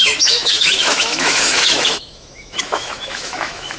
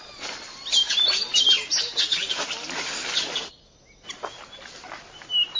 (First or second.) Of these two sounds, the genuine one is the second